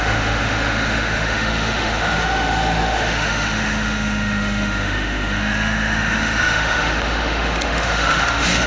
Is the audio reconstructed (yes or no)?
yes